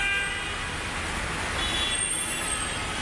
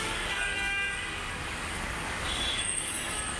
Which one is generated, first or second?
second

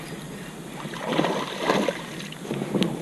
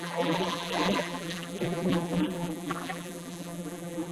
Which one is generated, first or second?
second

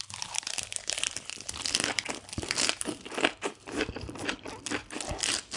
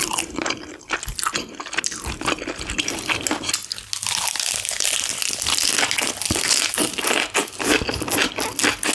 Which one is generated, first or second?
first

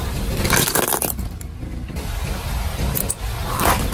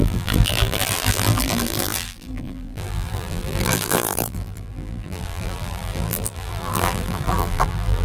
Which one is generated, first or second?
second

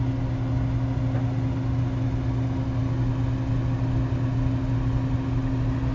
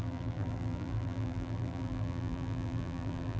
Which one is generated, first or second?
second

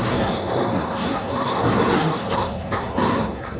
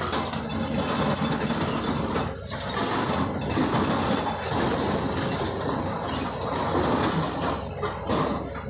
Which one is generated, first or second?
first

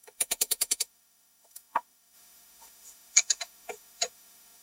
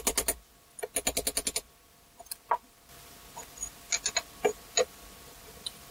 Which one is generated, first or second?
first